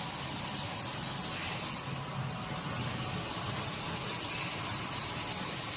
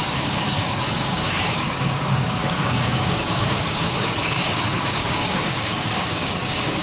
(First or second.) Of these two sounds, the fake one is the second